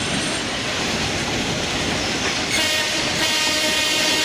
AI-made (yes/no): yes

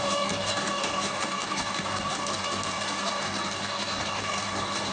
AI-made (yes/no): yes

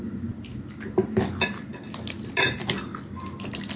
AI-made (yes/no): no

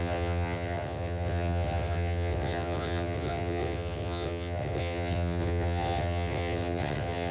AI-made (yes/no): yes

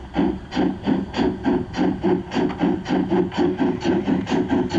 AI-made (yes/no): no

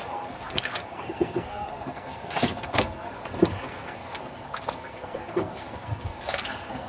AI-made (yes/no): yes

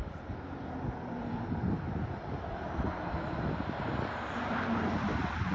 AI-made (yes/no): no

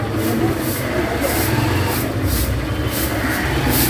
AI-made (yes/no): no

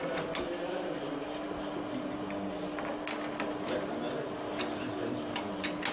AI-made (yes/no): no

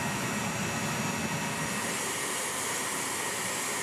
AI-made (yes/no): no